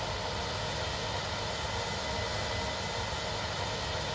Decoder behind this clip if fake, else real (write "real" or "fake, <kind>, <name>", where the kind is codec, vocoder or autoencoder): real